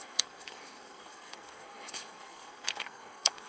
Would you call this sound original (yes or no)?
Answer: no